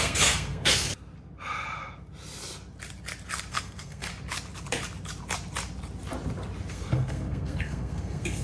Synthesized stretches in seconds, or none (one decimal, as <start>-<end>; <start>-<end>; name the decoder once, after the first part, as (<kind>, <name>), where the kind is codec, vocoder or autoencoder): 0.0-0.9 (codec, SNAC); 3.5-4.1; 6.7-8.4